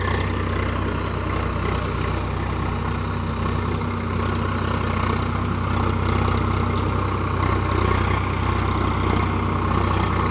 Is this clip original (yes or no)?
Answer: yes